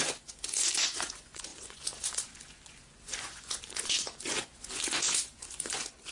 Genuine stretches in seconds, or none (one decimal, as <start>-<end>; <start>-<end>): none